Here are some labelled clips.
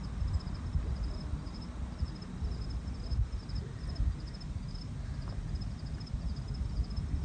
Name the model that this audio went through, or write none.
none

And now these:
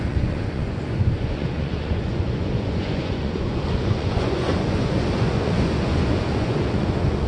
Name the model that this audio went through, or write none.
vocoder, Vocos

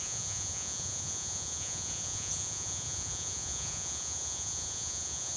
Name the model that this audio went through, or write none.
vocoder, Vocos